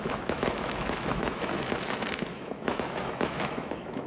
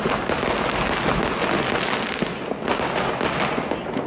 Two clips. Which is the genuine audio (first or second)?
second